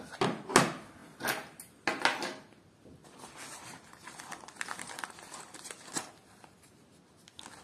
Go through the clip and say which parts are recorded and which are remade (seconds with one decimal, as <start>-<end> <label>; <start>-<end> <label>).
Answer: 0.0-3.0 recorded; 3.0-6.0 remade; 6.0-7.6 recorded